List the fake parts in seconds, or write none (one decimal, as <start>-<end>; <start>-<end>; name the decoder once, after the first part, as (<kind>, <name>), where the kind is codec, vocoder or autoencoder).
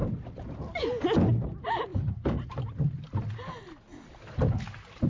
0.0-0.6 (vocoder, BigVGAN v2); 1.9-3.6